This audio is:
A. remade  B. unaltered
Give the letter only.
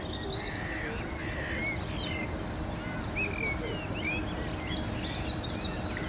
B